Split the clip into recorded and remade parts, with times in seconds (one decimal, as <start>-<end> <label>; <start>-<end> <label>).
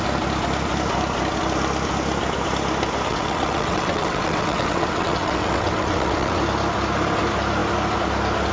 0.0-3.1 recorded; 3.1-6.4 remade; 6.4-8.5 recorded